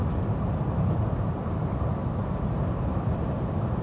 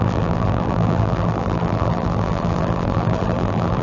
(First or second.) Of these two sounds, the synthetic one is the second